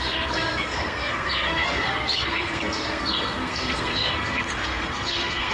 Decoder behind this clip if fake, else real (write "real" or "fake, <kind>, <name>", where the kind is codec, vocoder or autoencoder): fake, codec, SNAC